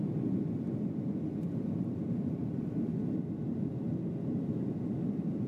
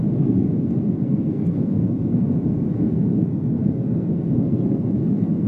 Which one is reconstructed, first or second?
second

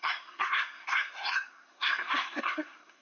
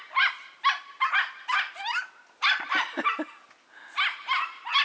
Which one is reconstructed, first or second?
first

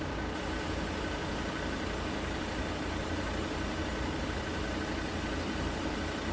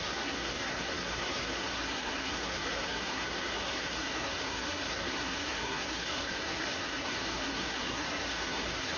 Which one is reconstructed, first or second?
second